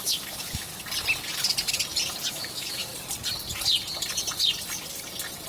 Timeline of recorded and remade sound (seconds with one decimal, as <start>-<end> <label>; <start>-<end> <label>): 0.0-0.7 remade; 0.7-2.3 recorded; 2.3-2.9 remade; 2.9-5.5 recorded